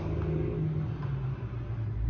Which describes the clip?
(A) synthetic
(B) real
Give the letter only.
B